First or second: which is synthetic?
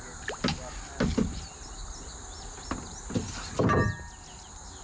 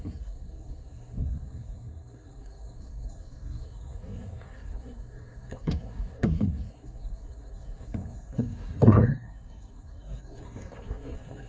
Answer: second